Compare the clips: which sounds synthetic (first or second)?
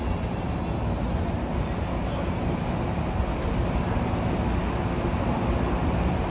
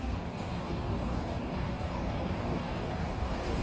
second